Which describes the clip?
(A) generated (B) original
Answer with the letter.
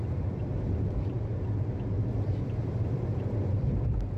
A